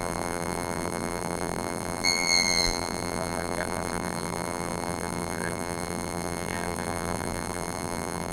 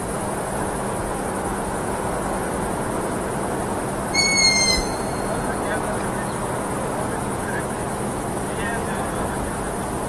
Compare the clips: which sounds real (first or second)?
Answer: second